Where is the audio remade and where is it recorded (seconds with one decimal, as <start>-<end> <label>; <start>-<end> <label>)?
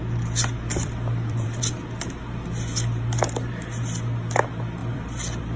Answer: 0.0-0.7 recorded; 0.7-1.6 remade; 1.6-4.8 recorded; 4.8-5.6 remade